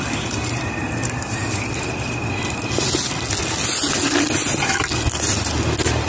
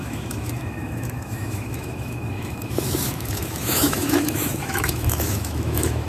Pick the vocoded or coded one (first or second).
second